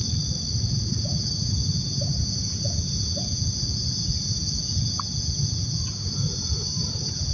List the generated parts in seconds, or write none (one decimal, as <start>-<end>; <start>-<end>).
0.7-7.3